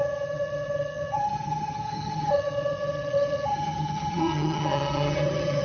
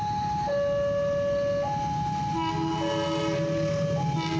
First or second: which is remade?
first